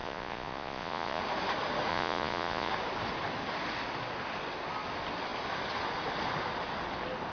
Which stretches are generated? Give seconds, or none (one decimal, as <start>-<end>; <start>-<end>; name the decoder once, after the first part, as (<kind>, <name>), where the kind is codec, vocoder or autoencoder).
0.0-1.2 (vocoder, Vocos); 1.9-2.7